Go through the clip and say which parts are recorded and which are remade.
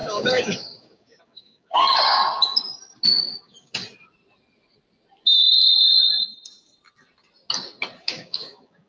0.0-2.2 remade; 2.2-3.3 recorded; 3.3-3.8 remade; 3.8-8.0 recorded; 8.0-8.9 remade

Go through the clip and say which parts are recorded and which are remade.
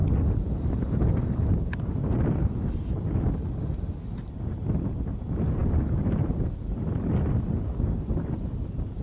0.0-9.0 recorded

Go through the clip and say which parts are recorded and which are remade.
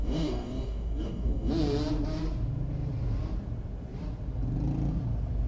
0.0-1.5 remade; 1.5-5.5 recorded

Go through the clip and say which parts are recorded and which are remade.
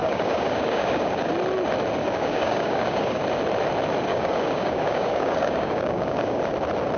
0.0-1.3 remade; 1.3-2.0 recorded; 2.0-3.2 remade; 3.2-4.1 recorded; 4.1-6.4 remade; 6.4-7.0 recorded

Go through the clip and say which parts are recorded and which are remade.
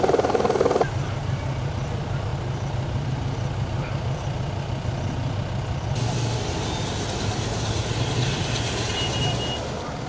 0.0-10.1 recorded